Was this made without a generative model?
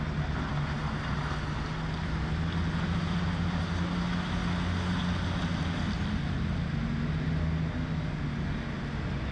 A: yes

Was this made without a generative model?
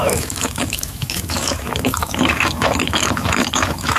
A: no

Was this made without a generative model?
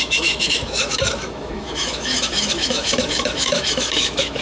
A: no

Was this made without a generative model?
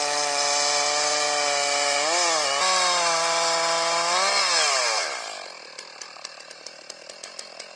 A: yes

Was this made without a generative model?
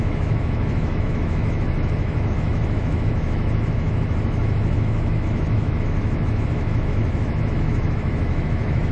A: no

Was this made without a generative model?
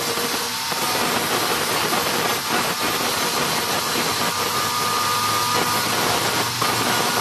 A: yes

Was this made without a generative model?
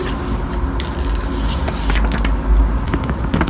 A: yes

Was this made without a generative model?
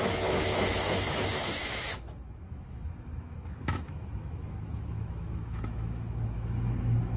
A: no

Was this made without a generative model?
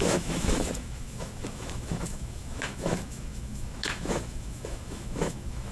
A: no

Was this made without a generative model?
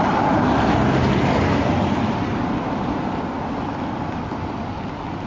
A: yes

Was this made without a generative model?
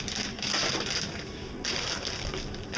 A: yes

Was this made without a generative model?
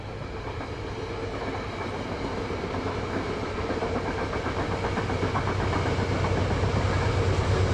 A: yes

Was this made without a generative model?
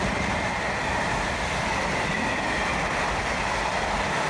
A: yes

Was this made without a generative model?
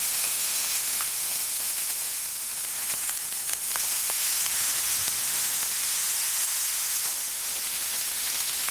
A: no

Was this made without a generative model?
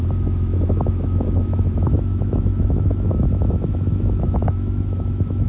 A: no